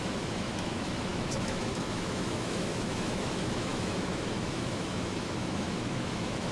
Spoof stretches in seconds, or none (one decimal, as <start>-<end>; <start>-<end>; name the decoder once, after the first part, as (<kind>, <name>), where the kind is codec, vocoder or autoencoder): 0.0-6.5 (autoencoder, DAC-VAE)